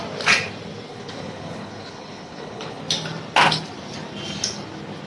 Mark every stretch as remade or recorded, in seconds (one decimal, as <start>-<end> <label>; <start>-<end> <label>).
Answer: 0.0-0.9 recorded; 0.9-2.8 remade; 2.8-5.1 recorded